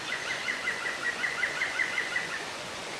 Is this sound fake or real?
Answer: fake